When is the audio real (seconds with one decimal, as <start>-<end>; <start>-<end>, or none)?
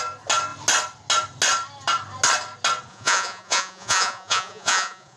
0.0-2.9